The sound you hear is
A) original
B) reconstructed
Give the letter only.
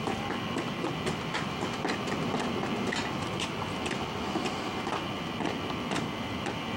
A